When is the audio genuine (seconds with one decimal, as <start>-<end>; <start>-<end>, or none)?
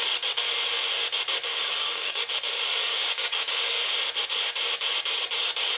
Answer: 0.0-1.5; 2.2-2.9; 3.8-5.8